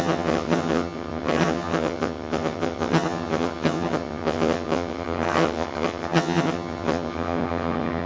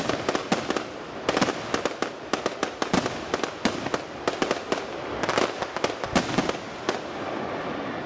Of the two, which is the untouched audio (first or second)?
second